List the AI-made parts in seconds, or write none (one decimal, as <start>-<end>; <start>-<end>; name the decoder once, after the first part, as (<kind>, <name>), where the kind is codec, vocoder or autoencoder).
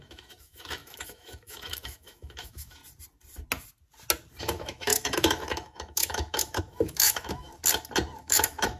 0.0-2.8 (autoencoder, DAC-VAE); 4.4-7.5; 8.2-8.8